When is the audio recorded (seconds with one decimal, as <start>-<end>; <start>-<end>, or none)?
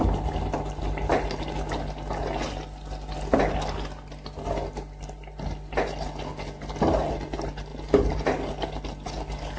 0.0-9.6